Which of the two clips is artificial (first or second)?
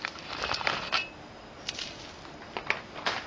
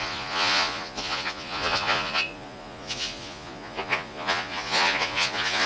second